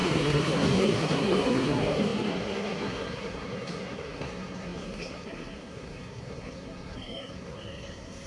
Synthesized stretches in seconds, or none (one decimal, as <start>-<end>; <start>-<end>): 0.0-8.3